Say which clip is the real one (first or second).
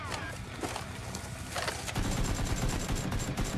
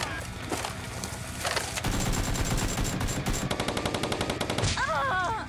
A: second